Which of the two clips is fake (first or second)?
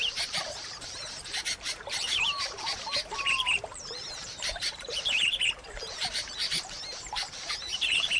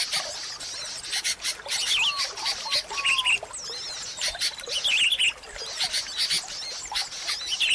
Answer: first